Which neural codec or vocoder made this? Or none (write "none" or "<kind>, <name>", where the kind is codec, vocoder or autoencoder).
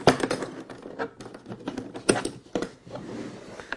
none